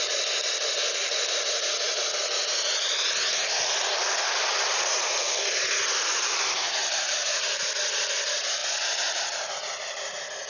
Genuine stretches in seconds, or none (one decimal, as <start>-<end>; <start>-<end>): 0.0-6.8; 7.7-10.5